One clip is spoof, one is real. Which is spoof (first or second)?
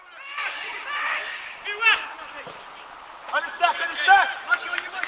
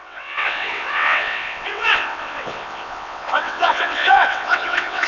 second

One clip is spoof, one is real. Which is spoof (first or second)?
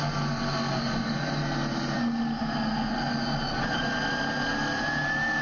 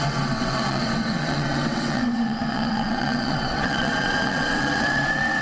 second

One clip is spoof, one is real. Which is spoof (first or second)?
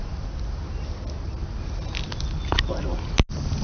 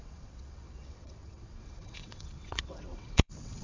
second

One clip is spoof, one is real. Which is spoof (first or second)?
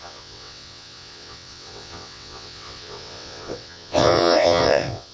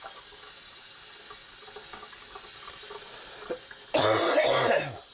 first